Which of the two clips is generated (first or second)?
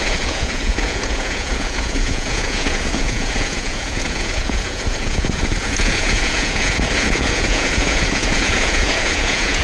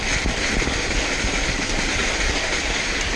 first